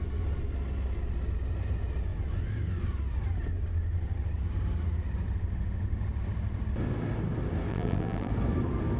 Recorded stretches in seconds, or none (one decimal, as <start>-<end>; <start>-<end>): 0.0-7.7; 8.3-9.0